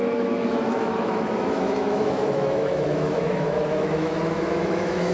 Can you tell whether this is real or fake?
fake